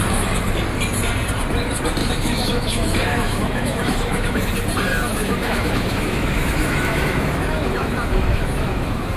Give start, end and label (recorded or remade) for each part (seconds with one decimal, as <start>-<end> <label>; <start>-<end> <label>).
0.0-2.0 recorded; 2.0-4.5 remade; 4.5-4.9 recorded; 4.9-9.2 remade